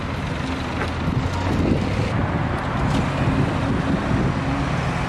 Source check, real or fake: real